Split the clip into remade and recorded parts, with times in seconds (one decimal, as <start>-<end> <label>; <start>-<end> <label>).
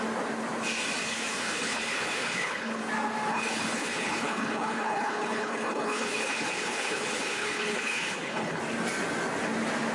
0.0-1.0 recorded; 1.0-2.8 remade; 2.8-3.3 recorded; 3.3-8.6 remade; 8.6-9.9 recorded